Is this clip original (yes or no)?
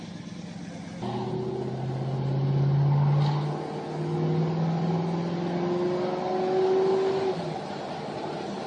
yes